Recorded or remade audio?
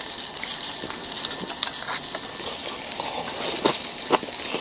recorded